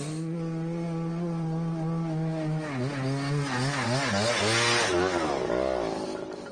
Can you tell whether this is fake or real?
real